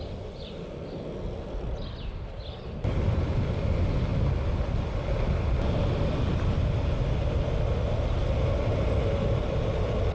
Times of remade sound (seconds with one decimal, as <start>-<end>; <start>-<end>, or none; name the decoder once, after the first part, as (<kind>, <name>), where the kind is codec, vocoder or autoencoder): none